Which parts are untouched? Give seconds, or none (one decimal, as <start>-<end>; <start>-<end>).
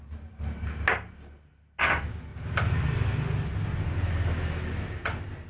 0.0-5.5